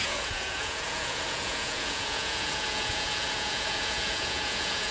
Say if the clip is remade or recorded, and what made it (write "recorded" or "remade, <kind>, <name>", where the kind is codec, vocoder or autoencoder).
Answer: remade, vocoder, Vocos